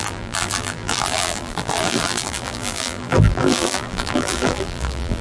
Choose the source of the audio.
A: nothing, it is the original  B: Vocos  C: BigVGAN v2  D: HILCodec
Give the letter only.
C